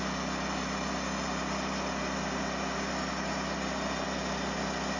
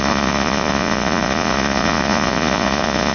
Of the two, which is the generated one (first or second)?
second